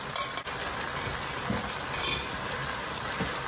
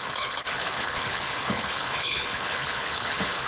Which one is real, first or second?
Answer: first